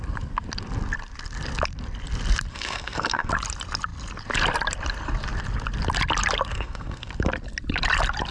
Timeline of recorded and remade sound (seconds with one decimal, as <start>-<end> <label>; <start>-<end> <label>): 0.0-2.5 recorded; 2.5-3.3 remade; 3.3-6.5 recorded; 6.5-7.1 remade; 7.1-8.3 recorded